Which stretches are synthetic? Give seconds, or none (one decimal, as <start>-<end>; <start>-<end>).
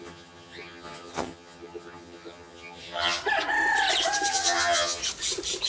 0.0-3.2; 4.3-5.0